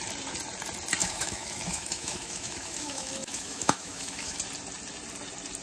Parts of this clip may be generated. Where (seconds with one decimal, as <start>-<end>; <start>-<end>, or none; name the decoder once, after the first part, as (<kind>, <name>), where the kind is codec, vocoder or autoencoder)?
1.0-4.4 (autoencoder, DAC-VAE)